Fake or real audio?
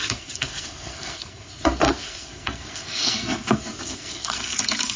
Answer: fake